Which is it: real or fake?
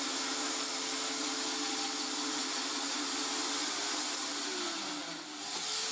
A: real